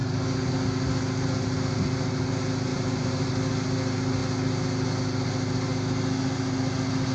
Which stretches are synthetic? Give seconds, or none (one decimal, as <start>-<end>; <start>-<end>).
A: 2.7-3.3